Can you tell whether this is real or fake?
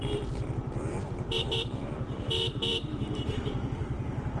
fake